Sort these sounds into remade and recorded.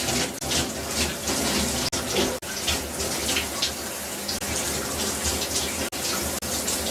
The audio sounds recorded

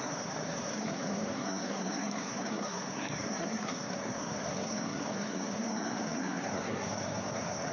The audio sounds remade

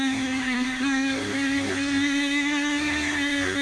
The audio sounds remade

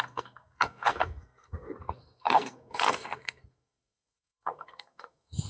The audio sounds remade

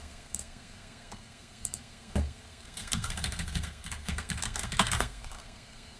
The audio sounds remade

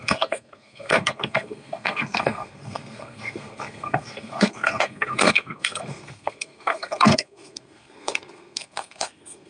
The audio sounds remade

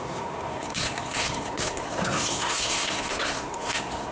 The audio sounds remade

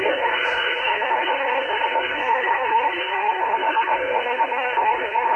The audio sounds remade